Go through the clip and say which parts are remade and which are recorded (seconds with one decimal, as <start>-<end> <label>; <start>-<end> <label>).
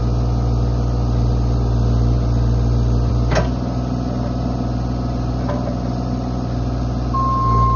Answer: 0.0-7.8 recorded